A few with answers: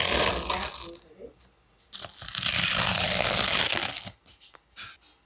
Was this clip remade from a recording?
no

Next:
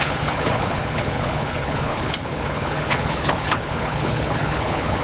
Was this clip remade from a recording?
yes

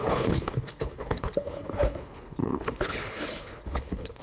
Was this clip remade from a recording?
yes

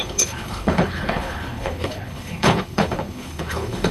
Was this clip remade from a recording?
yes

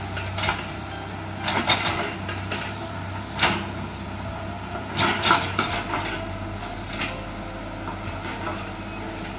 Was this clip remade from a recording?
no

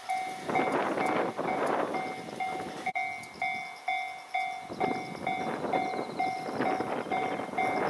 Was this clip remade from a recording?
no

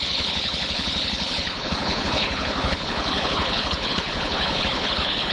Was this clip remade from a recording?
yes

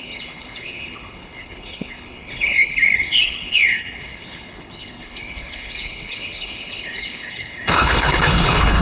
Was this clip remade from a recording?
yes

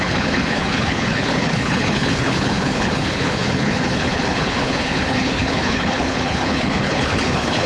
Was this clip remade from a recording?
yes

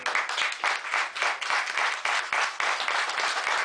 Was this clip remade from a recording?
no